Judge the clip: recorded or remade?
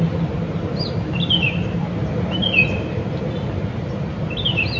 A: recorded